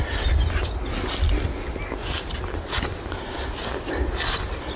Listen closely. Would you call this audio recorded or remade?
recorded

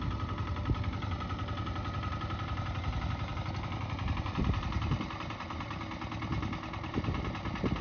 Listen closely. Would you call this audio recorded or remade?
recorded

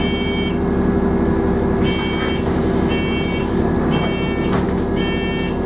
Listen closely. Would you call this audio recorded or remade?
recorded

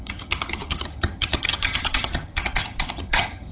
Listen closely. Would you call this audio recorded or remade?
remade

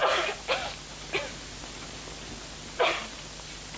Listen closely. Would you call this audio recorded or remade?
recorded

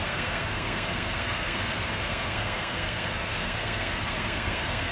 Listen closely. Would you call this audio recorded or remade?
remade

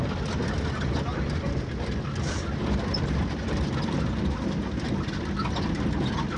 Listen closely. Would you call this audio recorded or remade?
recorded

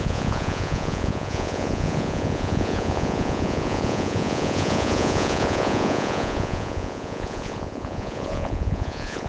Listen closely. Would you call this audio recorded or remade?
remade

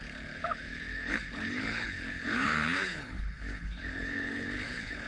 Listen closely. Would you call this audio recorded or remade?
remade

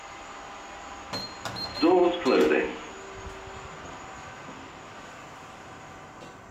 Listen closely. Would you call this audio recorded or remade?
recorded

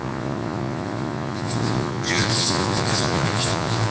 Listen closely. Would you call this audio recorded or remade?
remade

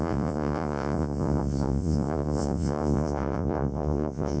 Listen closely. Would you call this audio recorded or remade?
remade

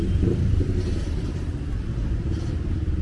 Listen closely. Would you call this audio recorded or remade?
recorded